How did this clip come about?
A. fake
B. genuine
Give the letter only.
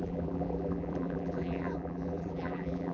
A